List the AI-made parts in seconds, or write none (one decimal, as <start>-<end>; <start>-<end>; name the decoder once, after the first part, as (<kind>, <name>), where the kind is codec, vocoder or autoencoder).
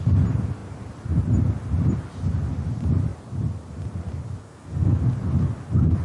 4.4-5.0 (codec, SNAC)